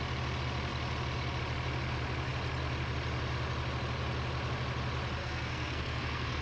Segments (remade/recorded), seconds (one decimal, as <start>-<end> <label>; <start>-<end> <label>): 0.0-5.2 recorded; 5.2-6.4 remade